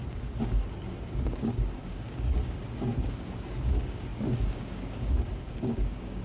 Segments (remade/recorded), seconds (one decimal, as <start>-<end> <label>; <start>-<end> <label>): 0.0-6.2 remade